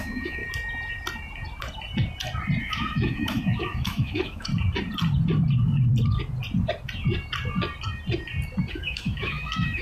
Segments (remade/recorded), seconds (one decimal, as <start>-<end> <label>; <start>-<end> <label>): 0.0-0.4 remade; 0.4-2.6 recorded; 2.6-4.5 remade; 4.5-8.7 recorded; 8.7-9.8 remade